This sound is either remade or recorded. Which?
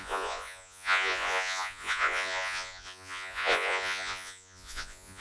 remade